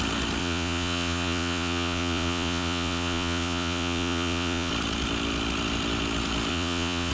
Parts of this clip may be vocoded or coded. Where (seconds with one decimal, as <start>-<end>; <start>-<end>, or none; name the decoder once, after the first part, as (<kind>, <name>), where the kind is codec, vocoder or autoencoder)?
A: 0.4-4.7 (vocoder, Vocos); 6.5-7.1